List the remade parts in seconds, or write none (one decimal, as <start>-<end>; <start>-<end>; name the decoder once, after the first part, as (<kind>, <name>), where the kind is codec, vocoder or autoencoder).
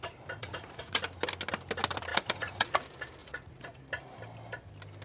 0.4-1.0 (vocoder, Vocos); 2.1-2.8; 3.2-3.8